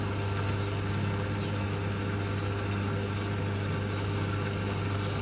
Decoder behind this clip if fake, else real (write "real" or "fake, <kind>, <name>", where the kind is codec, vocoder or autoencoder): real